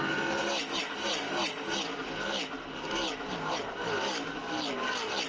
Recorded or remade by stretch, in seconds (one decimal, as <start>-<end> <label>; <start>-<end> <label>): 0.0-5.3 recorded